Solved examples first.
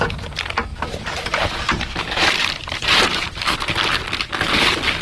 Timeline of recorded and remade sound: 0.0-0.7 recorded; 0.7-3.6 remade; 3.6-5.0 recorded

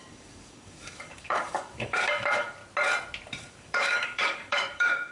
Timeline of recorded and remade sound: 0.0-2.6 remade; 2.6-3.4 recorded; 3.4-5.1 remade

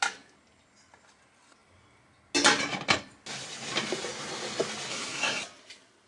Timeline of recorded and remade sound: 0.0-4.9 recorded; 4.9-5.4 remade; 5.4-6.1 recorded

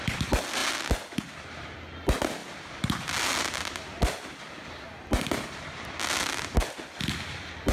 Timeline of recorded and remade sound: 0.0-7.7 recorded

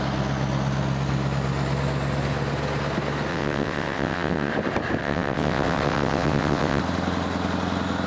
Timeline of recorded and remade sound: 0.0-3.3 recorded; 3.3-4.5 remade; 4.5-5.0 recorded; 5.0-6.8 remade; 6.8-8.1 recorded

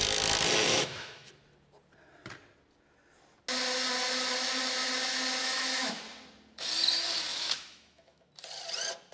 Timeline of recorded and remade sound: 0.0-0.7 recorded; 0.7-1.3 remade; 1.3-5.4 recorded; 5.4-6.0 remade; 6.0-7.3 recorded; 7.3-8.3 remade; 8.3-9.1 recorded